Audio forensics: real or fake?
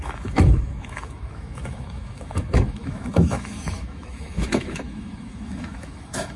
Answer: fake